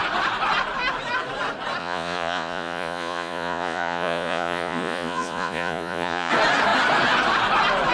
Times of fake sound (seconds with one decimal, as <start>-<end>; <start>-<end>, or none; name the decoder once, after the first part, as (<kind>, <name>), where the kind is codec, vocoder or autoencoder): 1.8-6.3 (vocoder, Vocos)